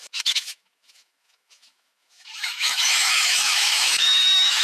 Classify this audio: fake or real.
fake